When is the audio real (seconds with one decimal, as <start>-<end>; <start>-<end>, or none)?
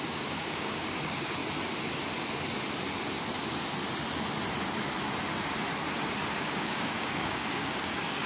1.4-6.4